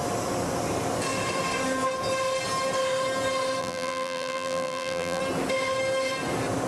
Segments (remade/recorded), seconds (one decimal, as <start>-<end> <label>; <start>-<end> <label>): 0.0-3.6 recorded; 3.6-5.2 remade; 5.2-6.7 recorded